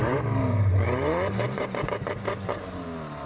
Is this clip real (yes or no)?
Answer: no